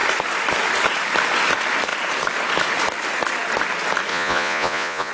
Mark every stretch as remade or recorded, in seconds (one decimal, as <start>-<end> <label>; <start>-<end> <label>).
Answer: 0.0-4.1 recorded; 4.1-5.1 remade